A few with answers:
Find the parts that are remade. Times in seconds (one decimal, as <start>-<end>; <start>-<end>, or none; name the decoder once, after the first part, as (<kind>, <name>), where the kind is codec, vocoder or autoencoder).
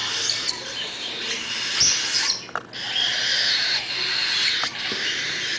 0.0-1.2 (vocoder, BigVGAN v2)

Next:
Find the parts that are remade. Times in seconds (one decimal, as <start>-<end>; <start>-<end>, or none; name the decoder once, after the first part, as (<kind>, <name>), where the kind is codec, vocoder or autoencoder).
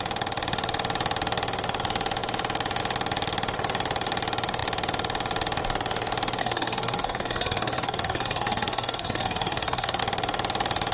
6.4-10.0 (codec, SNAC)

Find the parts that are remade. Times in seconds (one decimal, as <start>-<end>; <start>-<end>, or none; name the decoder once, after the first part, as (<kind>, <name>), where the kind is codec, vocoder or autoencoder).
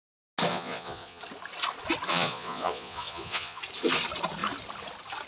0.5-1.2 (vocoder, Vocos); 2.1-3.6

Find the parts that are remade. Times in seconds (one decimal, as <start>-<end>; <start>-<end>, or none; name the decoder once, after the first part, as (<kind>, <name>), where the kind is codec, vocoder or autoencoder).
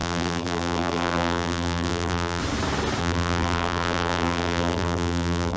0.0-2.4 (vocoder, BigVGAN v2); 3.0-5.6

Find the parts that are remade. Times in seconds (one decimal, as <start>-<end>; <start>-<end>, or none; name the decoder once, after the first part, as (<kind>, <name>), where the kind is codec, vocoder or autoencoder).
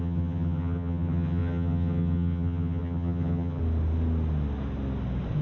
0.0-3.6 (vocoder, HiFi-GAN)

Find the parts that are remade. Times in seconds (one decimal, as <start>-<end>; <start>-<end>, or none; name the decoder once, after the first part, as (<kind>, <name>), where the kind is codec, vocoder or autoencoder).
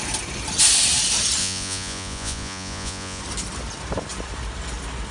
1.4-3.2 (vocoder, Vocos)